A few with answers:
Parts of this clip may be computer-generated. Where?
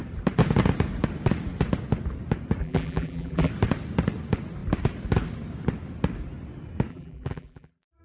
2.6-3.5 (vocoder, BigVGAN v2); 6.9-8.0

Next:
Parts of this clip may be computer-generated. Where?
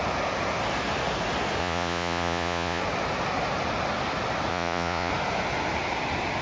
1.6-2.8 (vocoder, Vocos); 4.5-5.1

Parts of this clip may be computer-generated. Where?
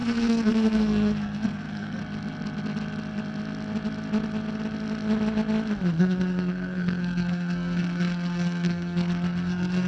0.0-2.0 (codec, SNAC); 6.0-9.9